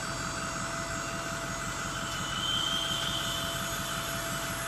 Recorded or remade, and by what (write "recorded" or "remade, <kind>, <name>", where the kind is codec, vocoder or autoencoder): recorded